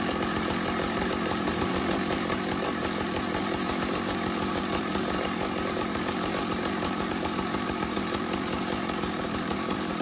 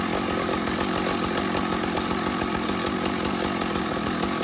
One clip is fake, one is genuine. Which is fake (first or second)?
first